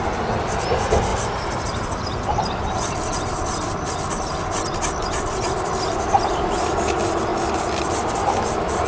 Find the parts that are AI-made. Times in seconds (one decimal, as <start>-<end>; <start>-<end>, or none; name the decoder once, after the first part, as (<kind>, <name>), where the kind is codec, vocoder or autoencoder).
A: none